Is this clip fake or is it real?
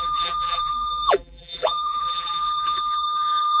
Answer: fake